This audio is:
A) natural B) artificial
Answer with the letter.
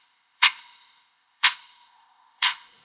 B